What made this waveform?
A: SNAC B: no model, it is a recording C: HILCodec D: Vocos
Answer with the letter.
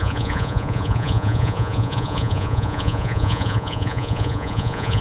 D